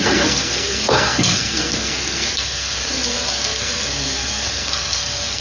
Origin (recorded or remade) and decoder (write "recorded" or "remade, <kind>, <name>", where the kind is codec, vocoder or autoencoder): remade, codec, SNAC